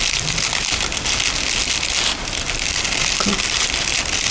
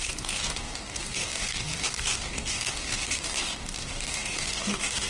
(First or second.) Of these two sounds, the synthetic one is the second